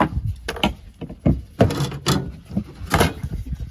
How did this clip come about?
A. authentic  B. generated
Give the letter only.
A